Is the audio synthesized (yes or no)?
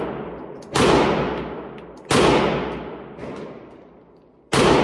no